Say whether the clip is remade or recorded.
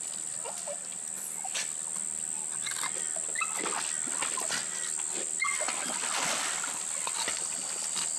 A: recorded